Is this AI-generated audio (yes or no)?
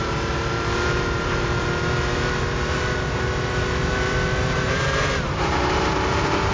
yes